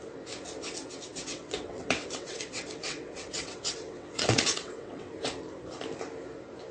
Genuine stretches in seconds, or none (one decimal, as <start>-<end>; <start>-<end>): 0.0-1.1; 5.1-6.7